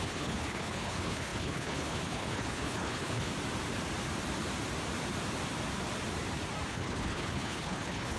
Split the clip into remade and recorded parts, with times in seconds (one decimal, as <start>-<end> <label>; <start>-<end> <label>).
0.0-3.3 remade; 3.3-6.7 recorded; 6.7-8.2 remade

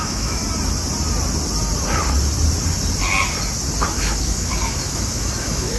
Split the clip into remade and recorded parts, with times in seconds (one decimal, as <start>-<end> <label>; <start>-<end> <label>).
0.0-0.4 remade; 0.4-3.9 recorded; 3.9-5.8 remade